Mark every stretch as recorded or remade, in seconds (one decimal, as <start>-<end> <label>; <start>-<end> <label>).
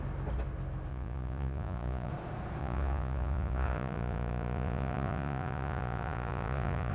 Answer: 0.0-0.9 recorded; 0.9-2.1 remade; 2.1-2.6 recorded; 2.6-6.9 remade